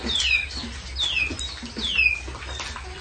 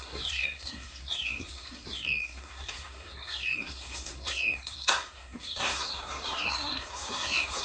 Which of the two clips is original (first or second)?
first